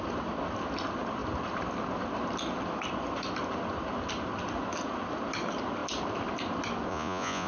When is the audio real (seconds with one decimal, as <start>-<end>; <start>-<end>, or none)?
0.0-6.9

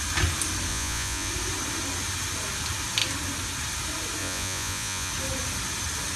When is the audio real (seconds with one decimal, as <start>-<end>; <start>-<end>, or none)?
0.0-0.7; 1.3-4.2; 5.1-6.2

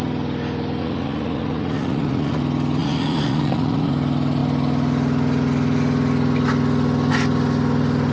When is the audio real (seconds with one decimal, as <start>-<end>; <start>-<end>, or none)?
0.0-0.8; 2.4-2.8; 3.9-8.1

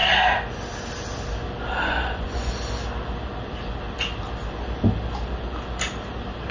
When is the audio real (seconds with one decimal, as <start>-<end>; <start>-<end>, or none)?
0.0-1.7; 2.5-6.5

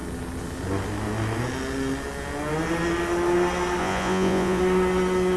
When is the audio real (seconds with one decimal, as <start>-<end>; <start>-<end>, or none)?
0.0-3.8; 4.6-5.4

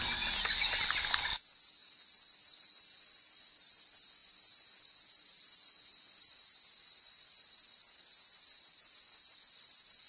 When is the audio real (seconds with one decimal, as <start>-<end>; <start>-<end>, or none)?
0.0-10.1

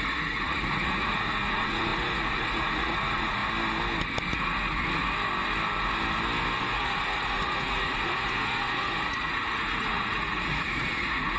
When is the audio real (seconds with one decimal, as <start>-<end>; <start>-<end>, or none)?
3.4-4.3; 5.0-6.6